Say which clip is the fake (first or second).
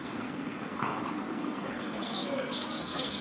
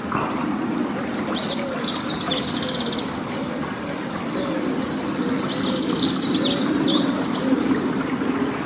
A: first